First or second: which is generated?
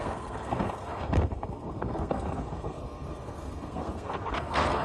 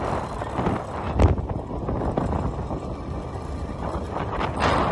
first